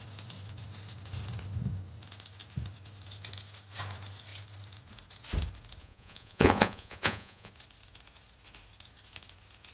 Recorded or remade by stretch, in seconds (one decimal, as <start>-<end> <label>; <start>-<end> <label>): 0.0-5.8 recorded; 5.8-7.5 remade; 7.5-9.7 recorded